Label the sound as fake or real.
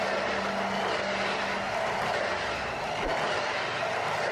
real